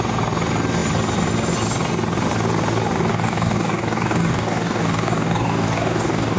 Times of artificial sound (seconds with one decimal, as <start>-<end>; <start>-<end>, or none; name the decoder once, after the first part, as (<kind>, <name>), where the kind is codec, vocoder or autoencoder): 3.1-6.4 (codec, DAC)

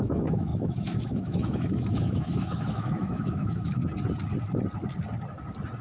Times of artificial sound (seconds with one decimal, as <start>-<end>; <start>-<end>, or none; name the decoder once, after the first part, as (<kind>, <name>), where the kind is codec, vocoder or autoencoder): 0.0-3.8 (autoencoder, DAC-VAE)

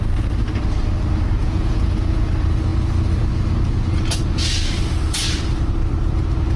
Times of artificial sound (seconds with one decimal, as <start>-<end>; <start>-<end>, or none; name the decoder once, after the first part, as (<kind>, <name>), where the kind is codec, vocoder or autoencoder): 1.4-2.3 (vocoder, Vocos)

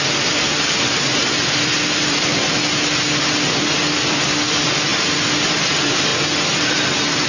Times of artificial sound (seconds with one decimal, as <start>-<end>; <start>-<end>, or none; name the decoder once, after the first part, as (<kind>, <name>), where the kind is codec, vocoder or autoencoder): 0.0-2.3 (vocoder, BigVGAN v2); 4.1-6.1; 6.8-7.3

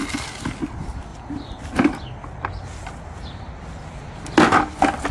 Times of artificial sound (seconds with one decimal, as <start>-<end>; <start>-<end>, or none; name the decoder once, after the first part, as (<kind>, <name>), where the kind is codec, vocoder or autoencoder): none

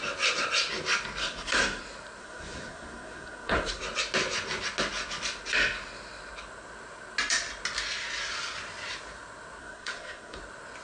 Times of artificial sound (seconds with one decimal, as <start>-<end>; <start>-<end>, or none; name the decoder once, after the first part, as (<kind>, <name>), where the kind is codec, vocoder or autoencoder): 1.2-1.8 (codec, SNAC); 2.2-3.8; 9.6-10.4

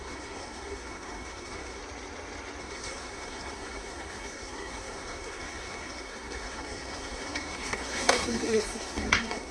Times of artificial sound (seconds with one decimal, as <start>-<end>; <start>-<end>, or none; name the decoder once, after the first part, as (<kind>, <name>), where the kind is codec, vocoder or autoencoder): 0.0-1.8 (codec, SNAC); 2.6-9.5

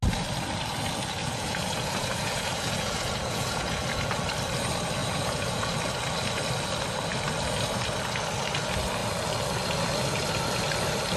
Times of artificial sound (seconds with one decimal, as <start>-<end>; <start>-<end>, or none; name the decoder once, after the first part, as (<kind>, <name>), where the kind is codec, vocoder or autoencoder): 1.2-4.0 (vocoder, Vocos); 5.0-5.7